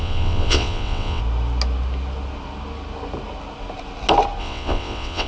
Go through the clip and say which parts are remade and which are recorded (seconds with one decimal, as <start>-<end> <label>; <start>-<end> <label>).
0.0-1.2 remade; 1.2-4.4 recorded; 4.4-5.3 remade